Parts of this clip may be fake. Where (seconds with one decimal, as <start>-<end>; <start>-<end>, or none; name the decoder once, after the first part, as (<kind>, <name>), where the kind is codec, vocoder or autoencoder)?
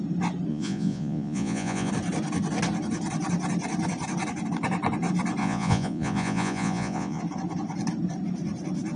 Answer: 0.5-1.9 (vocoder, Vocos); 5.4-7.2